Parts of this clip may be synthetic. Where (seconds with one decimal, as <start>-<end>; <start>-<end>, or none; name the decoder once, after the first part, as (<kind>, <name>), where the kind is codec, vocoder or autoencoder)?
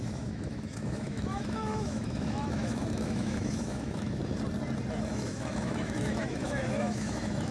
0.0-4.2 (autoencoder, DAC-VAE); 5.1-7.5